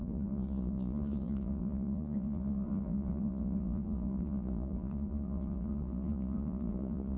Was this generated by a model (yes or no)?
yes